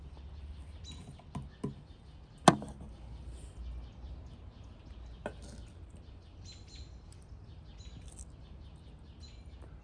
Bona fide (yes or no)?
yes